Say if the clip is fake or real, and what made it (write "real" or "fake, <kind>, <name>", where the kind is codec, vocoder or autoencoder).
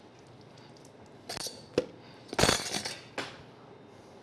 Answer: real